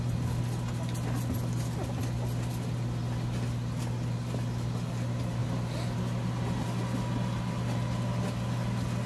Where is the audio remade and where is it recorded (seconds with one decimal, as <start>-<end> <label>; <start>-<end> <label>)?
0.0-9.1 recorded